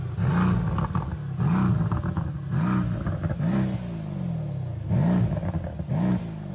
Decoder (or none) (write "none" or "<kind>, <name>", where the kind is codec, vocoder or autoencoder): none